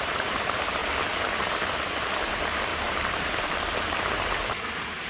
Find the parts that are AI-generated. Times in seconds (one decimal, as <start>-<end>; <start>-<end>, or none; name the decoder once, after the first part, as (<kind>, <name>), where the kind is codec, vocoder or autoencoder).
0.0-0.8 (vocoder, BigVGAN v2); 2.1-5.1